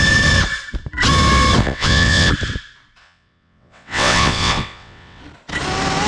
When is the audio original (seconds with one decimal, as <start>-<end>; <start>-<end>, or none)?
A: 0.0-1.6; 2.3-3.0; 5.2-6.1